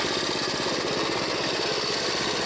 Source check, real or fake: real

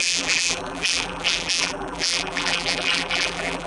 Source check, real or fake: fake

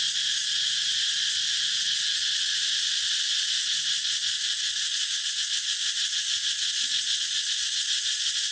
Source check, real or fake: real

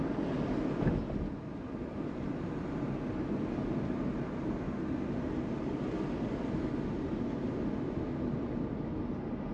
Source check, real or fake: real